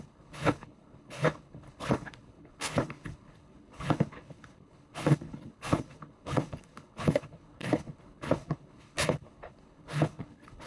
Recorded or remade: remade